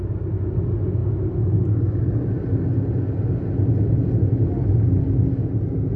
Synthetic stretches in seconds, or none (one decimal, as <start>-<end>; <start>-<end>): none